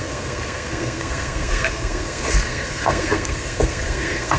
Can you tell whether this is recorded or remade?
remade